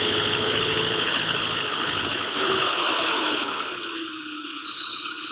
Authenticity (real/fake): fake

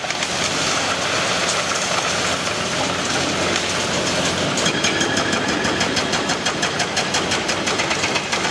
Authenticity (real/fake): real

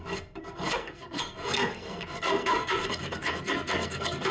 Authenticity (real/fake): fake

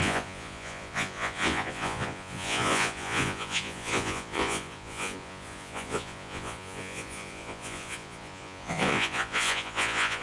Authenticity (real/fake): fake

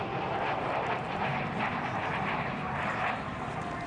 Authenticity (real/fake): real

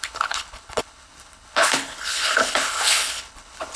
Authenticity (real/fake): fake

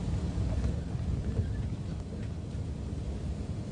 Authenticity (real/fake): real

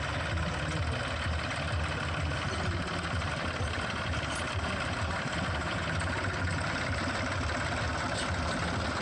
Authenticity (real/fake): real